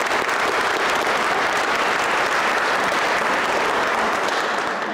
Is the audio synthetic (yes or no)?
no